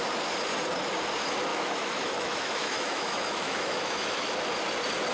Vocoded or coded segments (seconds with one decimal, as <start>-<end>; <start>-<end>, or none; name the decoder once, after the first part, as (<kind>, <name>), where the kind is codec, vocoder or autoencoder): 1.5-4.3 (autoencoder, DAC-VAE)